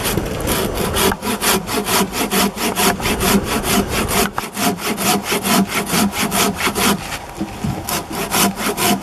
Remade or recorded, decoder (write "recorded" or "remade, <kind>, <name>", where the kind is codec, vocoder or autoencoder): recorded